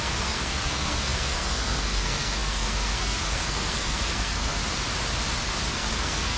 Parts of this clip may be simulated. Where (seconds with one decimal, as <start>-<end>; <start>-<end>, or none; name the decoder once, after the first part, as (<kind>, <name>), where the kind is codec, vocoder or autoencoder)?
0.0-4.6 (codec, SNAC); 5.7-6.4